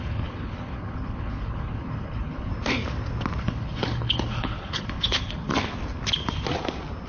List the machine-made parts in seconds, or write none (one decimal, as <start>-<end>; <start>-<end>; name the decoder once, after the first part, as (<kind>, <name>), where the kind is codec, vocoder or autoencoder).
0.0-2.5 (codec, HILCodec); 3.4-5.5